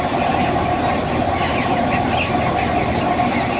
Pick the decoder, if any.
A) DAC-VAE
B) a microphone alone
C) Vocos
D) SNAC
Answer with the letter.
B